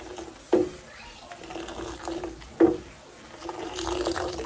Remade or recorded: recorded